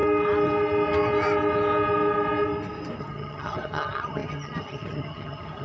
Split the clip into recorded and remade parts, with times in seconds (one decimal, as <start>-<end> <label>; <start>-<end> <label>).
0.0-3.0 recorded; 3.0-5.6 remade